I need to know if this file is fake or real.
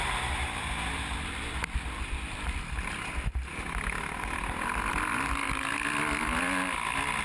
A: real